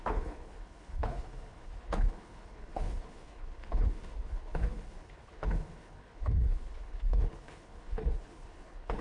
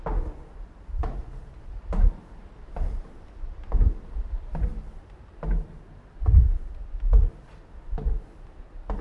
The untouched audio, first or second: second